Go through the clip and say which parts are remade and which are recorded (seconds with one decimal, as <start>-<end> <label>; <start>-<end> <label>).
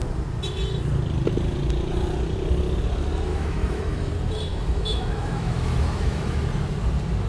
0.0-3.3 recorded; 3.3-4.1 remade; 4.1-4.5 recorded; 4.5-6.4 remade; 6.4-7.3 recorded